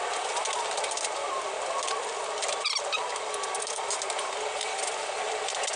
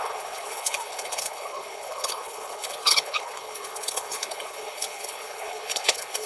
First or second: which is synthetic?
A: second